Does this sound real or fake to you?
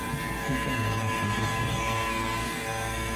fake